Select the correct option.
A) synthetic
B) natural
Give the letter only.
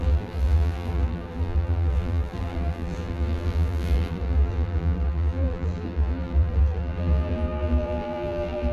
A